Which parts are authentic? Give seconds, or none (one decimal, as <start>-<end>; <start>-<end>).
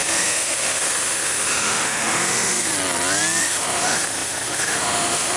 2.7-3.4